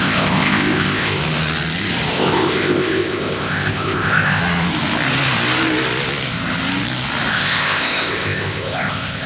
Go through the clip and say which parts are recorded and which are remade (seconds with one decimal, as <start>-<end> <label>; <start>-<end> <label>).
0.0-1.2 remade; 1.2-2.1 recorded; 2.1-4.4 remade; 4.4-7.3 recorded; 7.3-9.3 remade